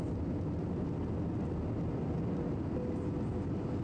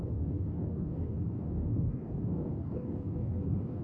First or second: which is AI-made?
second